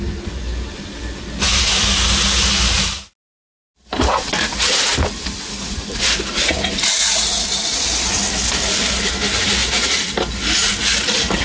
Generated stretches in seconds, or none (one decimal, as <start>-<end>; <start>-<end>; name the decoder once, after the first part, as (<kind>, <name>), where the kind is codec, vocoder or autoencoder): 0.5-2.5 (vocoder, BigVGAN v2); 9.6-10.3